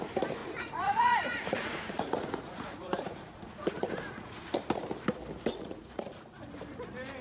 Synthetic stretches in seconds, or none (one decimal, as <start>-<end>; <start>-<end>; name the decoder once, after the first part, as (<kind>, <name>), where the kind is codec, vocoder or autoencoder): 0.4-4.7 (vocoder, Vocos); 5.5-6.4